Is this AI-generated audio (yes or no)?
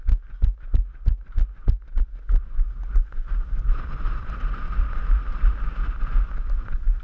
no